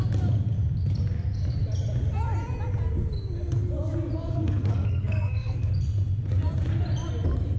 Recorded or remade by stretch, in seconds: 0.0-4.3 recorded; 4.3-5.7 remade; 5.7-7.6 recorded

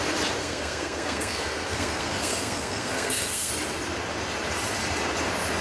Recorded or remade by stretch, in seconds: 0.0-0.4 recorded; 0.4-3.5 remade; 3.5-5.6 recorded

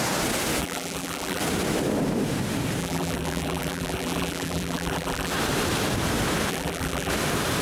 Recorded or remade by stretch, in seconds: 0.0-0.6 recorded; 0.6-1.4 remade; 1.4-2.8 recorded; 2.8-5.3 remade; 5.3-6.5 recorded; 6.5-7.1 remade; 7.1-7.6 recorded

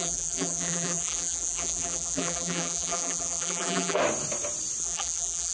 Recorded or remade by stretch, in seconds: 0.0-4.0 remade; 4.0-4.8 recorded; 4.8-5.5 remade

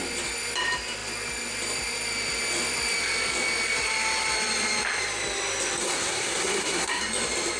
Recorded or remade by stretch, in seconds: 0.0-5.8 recorded; 5.8-7.0 remade; 7.0-7.6 recorded

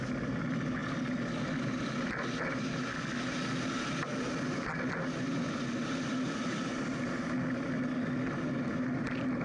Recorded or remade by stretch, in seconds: 0.0-9.4 recorded

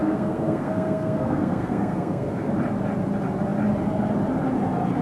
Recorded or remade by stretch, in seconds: 0.0-2.5 remade; 2.5-5.0 recorded

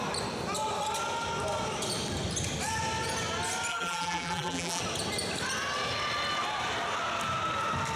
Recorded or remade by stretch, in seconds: 0.0-3.7 recorded; 3.7-4.8 remade; 4.8-8.0 recorded